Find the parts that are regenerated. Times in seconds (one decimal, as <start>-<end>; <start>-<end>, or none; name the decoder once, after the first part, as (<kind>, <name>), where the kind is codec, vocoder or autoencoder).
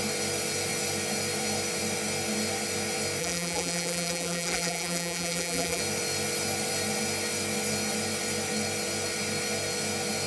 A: 3.2-5.8 (vocoder, BigVGAN v2)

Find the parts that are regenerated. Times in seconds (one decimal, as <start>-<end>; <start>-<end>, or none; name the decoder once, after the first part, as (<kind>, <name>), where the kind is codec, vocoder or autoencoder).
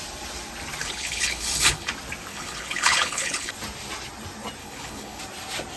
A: 0.8-1.9 (codec, HILCodec); 2.3-3.5; 4.6-5.2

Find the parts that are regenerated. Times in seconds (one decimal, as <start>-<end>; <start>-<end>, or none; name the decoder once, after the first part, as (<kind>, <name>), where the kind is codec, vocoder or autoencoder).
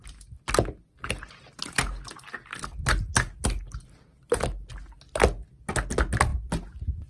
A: none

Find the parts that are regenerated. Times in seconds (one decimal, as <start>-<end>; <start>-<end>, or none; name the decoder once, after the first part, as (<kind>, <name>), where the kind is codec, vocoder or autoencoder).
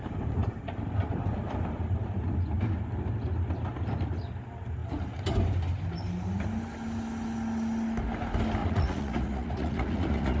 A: 8.6-10.4 (vocoder, Vocos)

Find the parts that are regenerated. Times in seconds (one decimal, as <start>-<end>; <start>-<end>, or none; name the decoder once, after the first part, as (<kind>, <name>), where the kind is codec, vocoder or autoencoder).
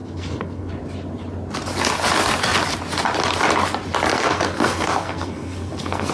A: 0.0-0.7 (codec, SNAC); 4.1-6.1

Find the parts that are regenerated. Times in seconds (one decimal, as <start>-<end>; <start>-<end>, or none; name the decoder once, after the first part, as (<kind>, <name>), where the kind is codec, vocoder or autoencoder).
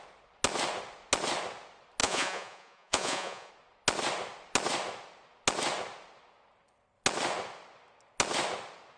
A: 2.0-3.5 (vocoder, Vocos)